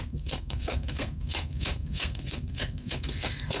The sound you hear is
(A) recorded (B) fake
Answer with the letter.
B